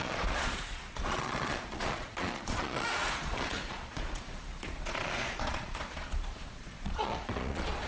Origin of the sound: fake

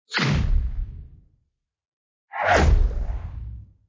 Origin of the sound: real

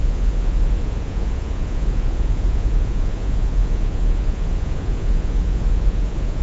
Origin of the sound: fake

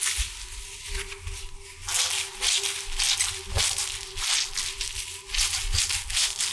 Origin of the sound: real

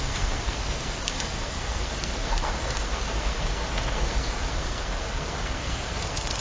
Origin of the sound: fake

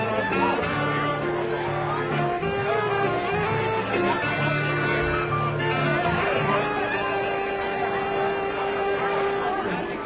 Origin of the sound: real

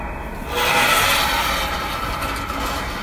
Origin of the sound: real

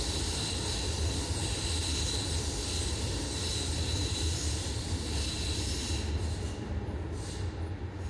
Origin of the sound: real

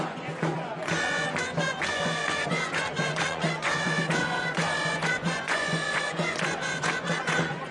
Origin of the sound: fake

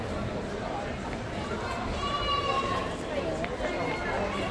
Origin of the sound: real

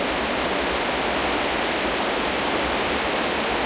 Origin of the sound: real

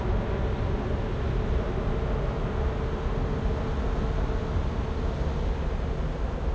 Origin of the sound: real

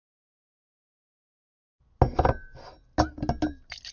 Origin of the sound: real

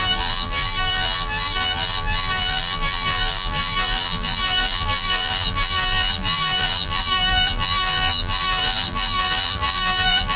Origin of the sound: fake